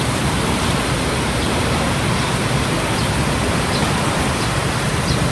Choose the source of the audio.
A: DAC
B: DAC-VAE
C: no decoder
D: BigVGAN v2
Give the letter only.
C